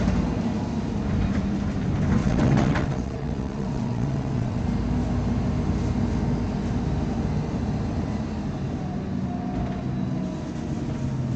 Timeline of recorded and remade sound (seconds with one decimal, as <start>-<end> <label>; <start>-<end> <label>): 0.0-2.2 recorded; 2.2-4.6 remade; 4.6-11.4 recorded